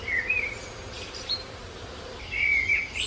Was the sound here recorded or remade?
remade